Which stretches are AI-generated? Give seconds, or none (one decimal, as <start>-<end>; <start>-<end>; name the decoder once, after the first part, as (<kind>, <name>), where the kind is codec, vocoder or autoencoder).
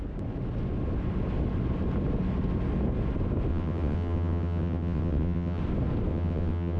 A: 3.5-5.6 (vocoder, WaveNeXt); 6.1-6.8